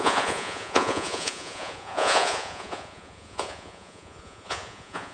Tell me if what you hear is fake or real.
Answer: fake